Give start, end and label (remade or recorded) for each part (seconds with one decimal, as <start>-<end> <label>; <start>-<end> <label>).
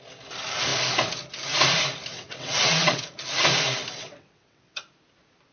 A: 0.0-2.1 recorded; 2.1-3.0 remade; 3.0-4.0 recorded; 4.0-4.8 remade; 4.8-5.5 recorded